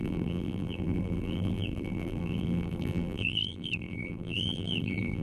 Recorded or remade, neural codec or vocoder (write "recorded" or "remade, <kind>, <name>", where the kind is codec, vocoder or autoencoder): remade, vocoder, BigVGAN v2